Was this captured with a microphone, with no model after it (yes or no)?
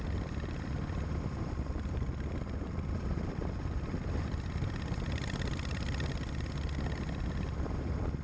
yes